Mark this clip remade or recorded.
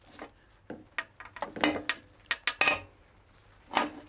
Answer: recorded